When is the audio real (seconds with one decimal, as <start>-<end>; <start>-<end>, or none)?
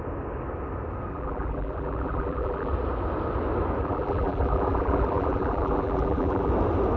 0.0-1.1; 2.7-3.8; 6.5-7.0